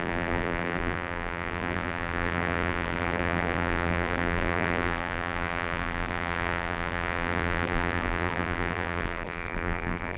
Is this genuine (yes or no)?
no